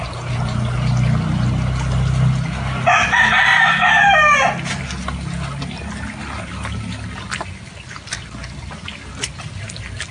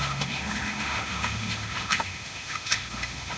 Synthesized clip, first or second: second